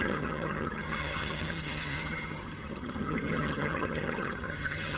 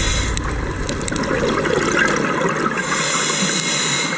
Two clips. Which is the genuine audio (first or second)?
second